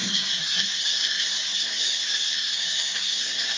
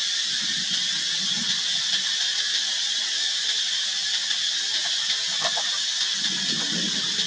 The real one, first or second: second